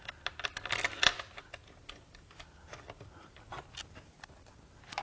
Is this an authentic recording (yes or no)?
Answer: yes